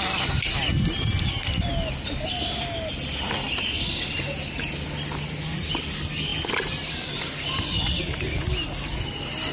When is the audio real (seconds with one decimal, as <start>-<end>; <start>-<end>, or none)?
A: 0.0-9.5